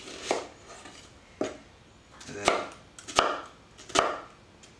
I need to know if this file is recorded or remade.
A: recorded